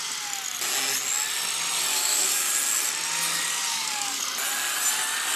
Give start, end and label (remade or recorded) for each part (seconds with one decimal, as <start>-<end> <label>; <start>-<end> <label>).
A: 0.0-1.9 recorded; 1.9-2.5 remade; 2.5-3.7 recorded; 3.7-4.2 remade; 4.2-5.4 recorded